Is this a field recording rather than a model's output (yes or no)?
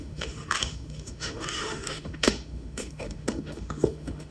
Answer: no